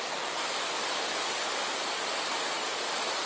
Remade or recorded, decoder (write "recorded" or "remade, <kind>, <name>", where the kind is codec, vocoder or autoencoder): recorded